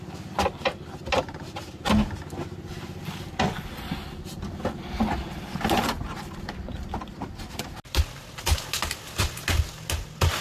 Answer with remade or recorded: recorded